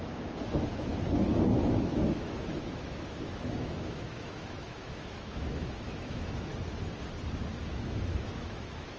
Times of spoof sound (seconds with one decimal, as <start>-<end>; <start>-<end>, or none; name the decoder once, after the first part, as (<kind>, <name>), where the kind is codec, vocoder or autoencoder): 0.0-0.9 (autoencoder, DAC-VAE); 1.4-6.5; 7.7-9.0